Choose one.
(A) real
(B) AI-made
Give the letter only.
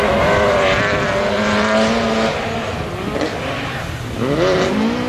A